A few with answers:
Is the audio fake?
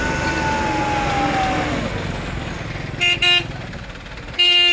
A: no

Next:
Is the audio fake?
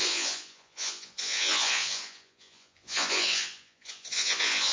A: yes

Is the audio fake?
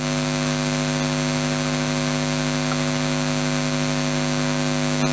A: no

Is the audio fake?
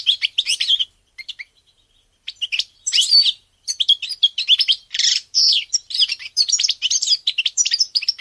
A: yes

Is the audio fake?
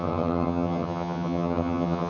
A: yes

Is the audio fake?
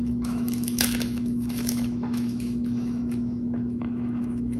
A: yes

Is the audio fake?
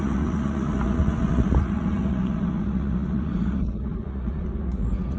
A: yes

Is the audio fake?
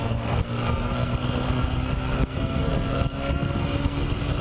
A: yes